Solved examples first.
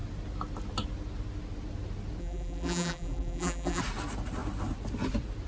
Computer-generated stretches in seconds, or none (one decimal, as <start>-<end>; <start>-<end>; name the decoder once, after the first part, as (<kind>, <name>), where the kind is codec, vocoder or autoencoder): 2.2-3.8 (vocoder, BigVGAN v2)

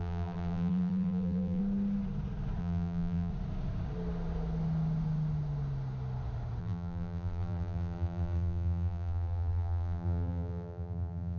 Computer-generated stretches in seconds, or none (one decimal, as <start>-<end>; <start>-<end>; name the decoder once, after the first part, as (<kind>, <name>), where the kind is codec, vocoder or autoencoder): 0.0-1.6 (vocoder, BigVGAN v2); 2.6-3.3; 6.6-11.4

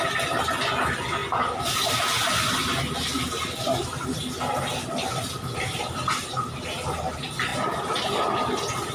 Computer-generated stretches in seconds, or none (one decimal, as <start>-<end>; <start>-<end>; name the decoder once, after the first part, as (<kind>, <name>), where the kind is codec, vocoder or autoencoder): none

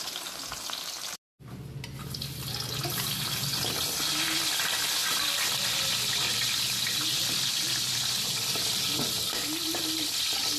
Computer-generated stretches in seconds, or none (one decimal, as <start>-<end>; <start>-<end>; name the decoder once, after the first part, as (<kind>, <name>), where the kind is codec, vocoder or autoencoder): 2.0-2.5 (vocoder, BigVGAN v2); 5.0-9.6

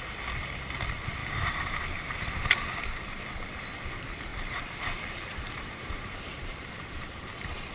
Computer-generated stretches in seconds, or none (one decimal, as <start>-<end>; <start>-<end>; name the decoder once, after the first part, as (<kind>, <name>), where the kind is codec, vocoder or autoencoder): 1.2-1.8 (vocoder, BigVGAN v2); 4.3-6.7

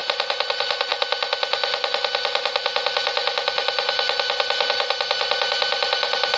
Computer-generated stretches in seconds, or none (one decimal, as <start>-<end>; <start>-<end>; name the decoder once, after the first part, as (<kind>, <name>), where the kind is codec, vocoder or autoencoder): 0.0-0.9 (vocoder, BigVGAN v2); 4.7-6.4

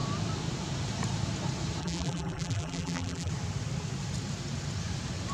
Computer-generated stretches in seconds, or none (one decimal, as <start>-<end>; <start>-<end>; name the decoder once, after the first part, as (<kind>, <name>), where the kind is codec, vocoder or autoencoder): 1.8-3.3 (vocoder, BigVGAN v2)

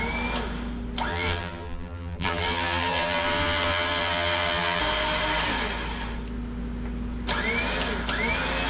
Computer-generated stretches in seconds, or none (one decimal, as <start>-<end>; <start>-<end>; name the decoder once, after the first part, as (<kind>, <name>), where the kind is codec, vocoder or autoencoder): 1.1-4.8 (vocoder, BigVGAN v2)